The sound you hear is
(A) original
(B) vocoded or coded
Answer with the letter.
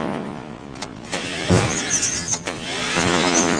B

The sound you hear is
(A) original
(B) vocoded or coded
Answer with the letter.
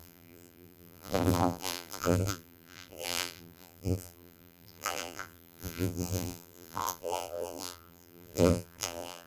B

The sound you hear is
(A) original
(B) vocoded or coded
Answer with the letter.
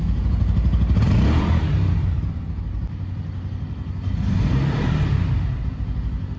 A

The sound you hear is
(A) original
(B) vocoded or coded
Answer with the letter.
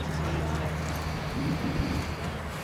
A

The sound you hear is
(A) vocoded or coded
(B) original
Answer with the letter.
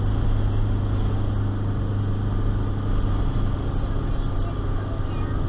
B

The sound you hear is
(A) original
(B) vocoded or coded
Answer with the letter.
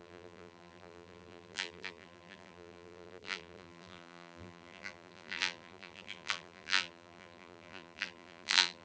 B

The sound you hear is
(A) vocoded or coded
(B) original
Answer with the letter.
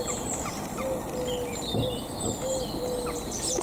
B